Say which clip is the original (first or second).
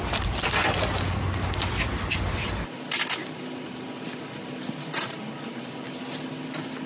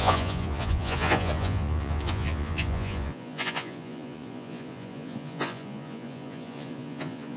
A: first